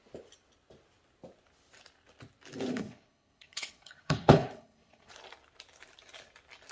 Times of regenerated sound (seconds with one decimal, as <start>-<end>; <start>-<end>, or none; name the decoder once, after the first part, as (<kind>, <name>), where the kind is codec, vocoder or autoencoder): 2.7-5.1 (codec, HILCodec)